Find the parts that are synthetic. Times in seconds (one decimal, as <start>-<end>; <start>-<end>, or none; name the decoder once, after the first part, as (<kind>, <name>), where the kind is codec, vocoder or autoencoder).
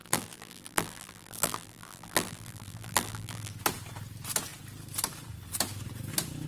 0.0-3.5 (vocoder, BigVGAN v2)